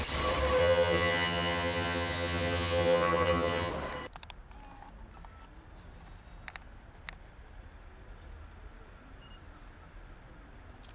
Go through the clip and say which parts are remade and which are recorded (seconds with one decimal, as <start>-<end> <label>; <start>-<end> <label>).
0.0-0.6 recorded; 0.6-3.7 remade; 3.7-10.9 recorded